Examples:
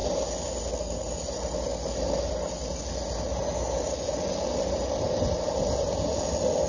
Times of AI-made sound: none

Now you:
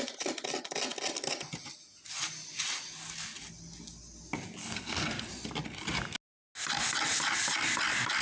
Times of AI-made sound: 4.6-5.2

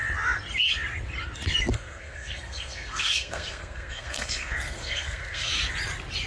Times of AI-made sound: 1.7-5.5

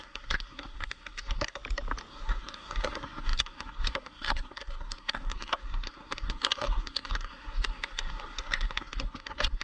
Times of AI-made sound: 0.0-1.6; 2.1-9.6

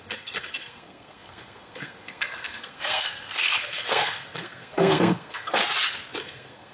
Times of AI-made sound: 0.0-5.6; 6.1-6.7